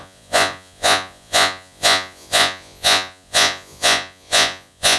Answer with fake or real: fake